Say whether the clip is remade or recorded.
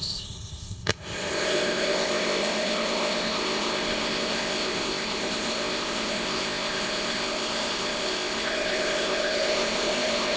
remade